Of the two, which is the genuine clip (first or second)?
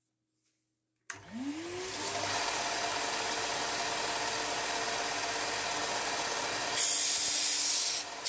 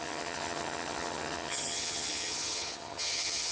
first